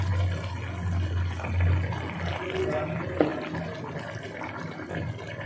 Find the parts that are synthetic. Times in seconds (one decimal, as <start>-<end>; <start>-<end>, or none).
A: none

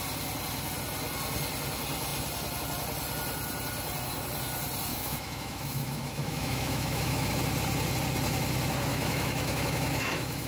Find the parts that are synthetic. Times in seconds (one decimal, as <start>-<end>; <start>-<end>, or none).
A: 4.9-7.3; 8.9-10.5